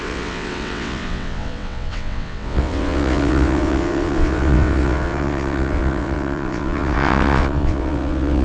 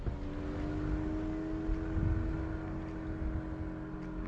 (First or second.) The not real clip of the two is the first